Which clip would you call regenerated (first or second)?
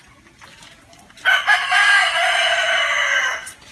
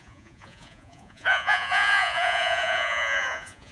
second